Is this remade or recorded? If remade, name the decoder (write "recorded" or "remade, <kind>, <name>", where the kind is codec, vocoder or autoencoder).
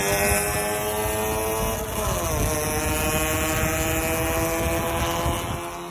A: recorded